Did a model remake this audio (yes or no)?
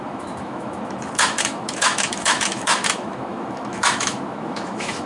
yes